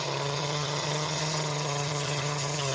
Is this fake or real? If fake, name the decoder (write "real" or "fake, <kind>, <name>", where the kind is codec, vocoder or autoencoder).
fake, vocoder, HiFi-GAN